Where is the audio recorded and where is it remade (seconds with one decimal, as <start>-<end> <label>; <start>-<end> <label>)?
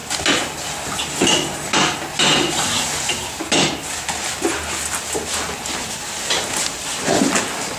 0.0-7.8 recorded